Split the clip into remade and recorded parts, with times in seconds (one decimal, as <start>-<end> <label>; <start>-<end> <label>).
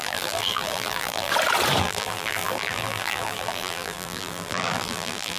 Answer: 0.0-1.3 remade; 1.3-1.8 recorded; 1.8-5.4 remade